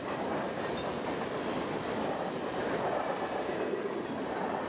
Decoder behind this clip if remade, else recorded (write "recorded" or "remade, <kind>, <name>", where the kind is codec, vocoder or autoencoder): recorded